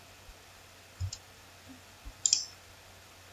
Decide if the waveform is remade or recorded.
recorded